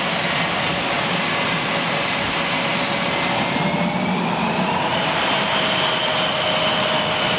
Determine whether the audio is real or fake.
real